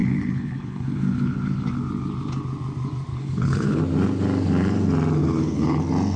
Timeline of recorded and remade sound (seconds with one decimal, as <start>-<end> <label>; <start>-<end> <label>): 0.0-1.8 remade; 1.8-3.1 recorded; 3.1-3.8 remade; 3.8-5.2 recorded; 5.2-5.8 remade; 5.8-6.2 recorded